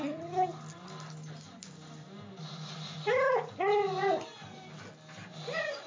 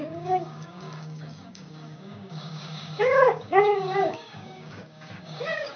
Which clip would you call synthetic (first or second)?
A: second